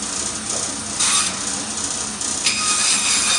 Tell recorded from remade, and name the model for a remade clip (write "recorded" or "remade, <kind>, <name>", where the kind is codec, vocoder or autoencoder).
recorded